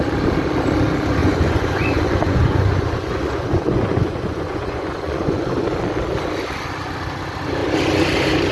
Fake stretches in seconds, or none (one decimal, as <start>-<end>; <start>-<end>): 1.2-5.8